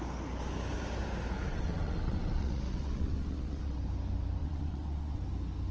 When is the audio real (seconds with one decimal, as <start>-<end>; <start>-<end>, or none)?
0.0-1.5; 3.8-4.4; 5.2-5.7